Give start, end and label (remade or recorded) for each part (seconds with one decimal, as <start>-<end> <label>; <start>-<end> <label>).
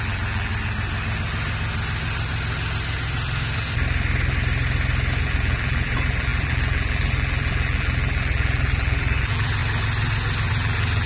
0.0-0.5 remade; 0.5-5.2 recorded; 5.2-9.6 remade; 9.6-10.5 recorded; 10.5-11.1 remade